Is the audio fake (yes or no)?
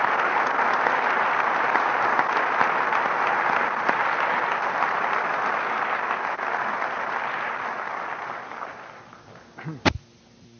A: no